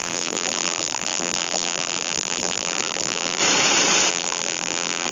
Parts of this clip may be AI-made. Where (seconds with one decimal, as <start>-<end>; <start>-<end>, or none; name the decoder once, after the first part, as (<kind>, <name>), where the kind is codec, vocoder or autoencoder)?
0.0-3.4 (vocoder, BigVGAN v2); 4.1-5.1